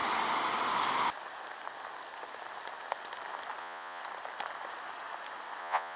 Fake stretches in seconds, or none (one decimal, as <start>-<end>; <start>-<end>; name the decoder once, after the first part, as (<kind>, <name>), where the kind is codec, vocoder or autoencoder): 3.6-4.0 (vocoder, Vocos); 5.6-6.0